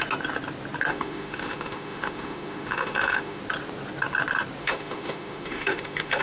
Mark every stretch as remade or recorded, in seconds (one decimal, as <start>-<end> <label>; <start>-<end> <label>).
0.0-0.9 recorded; 0.9-3.4 remade; 3.4-4.6 recorded; 4.6-6.2 remade